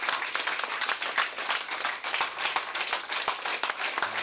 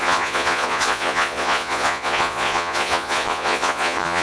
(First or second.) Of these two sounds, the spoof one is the second